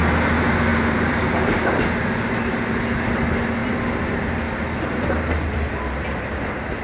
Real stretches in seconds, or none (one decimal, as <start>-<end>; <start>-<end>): 0.0-0.7; 1.3-3.6; 6.2-6.8